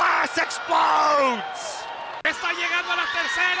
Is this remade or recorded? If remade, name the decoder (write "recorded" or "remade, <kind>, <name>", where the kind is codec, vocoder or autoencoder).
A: recorded